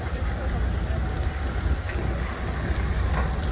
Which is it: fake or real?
real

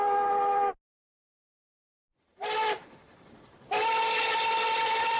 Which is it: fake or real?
real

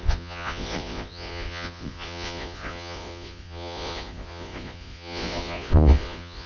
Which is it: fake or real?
fake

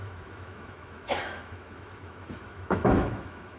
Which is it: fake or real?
fake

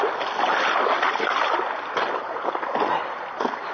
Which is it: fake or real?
real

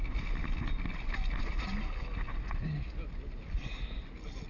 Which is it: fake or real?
real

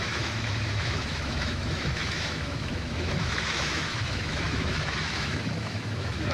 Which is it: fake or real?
fake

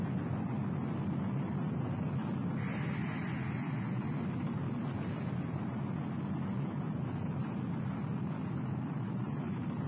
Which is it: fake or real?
real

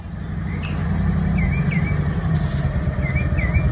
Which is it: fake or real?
real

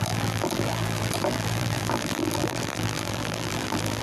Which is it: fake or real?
fake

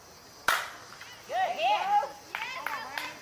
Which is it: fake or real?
real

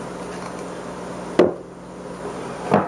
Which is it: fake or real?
real